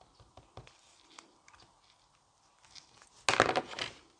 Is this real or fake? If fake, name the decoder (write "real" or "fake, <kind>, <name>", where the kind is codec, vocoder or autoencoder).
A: real